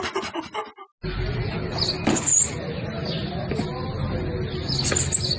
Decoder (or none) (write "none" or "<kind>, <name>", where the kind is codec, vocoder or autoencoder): none